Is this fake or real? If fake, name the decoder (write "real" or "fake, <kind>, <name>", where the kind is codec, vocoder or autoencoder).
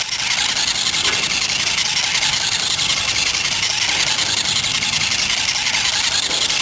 real